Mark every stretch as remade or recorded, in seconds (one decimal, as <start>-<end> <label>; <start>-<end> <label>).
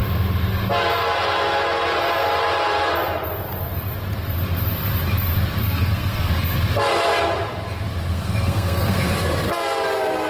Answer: 0.0-5.6 recorded; 5.6-6.3 remade; 6.3-8.1 recorded; 8.1-9.1 remade; 9.1-10.3 recorded